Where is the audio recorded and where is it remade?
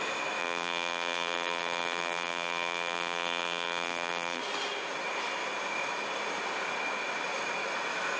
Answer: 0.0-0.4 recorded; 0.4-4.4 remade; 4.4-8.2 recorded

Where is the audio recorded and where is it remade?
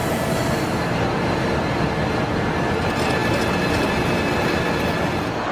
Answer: 0.0-1.1 remade; 1.1-5.5 recorded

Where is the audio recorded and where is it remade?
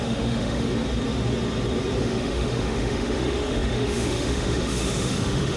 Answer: 0.0-0.7 remade; 0.7-2.0 recorded; 2.0-5.6 remade